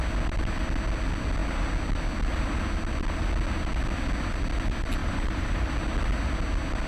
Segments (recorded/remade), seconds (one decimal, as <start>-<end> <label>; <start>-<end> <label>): 0.0-5.0 recorded; 5.0-5.7 remade; 5.7-6.9 recorded